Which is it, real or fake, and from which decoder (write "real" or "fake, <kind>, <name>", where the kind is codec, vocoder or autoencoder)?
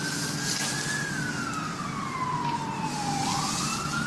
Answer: real